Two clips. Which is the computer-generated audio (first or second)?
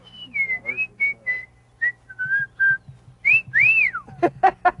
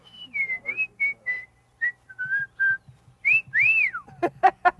second